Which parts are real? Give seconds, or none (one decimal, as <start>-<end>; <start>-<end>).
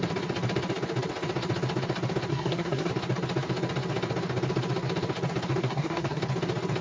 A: 0.0-2.3; 2.9-5.6; 6.2-6.8